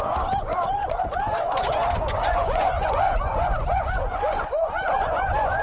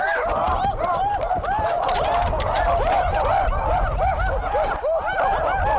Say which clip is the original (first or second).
second